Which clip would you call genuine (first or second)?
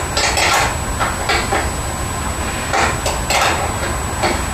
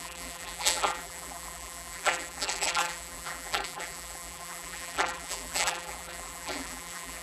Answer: first